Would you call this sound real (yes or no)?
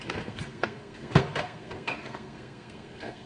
no